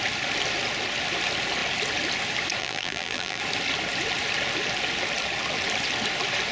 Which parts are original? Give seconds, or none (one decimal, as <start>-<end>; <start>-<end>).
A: 0.0-2.6; 3.4-6.5